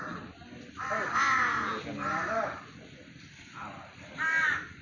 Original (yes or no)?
yes